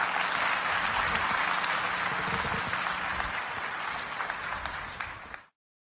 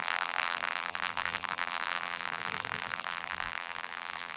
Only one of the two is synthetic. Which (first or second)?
second